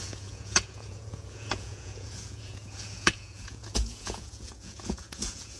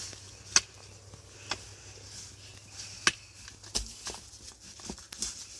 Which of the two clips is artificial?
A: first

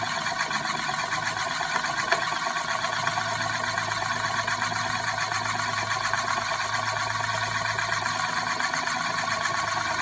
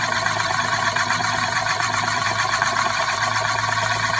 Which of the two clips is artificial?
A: second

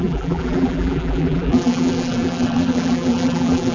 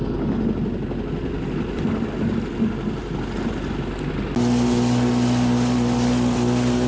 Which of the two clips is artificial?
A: first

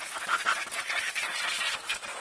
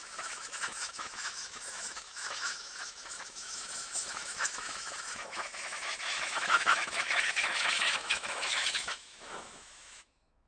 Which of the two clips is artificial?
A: second